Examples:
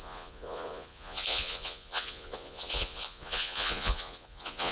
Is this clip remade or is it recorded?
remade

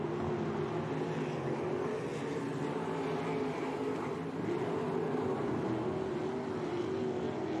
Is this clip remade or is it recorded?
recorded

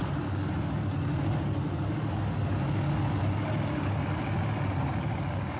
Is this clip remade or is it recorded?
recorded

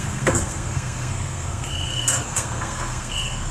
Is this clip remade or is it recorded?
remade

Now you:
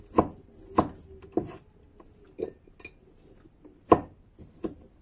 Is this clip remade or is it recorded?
recorded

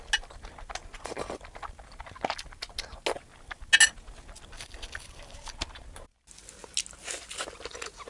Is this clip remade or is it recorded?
recorded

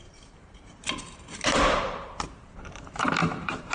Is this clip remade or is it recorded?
remade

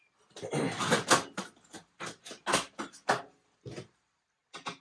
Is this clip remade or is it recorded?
recorded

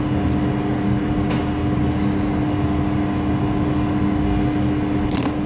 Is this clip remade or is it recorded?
recorded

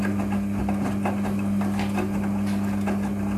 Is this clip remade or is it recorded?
recorded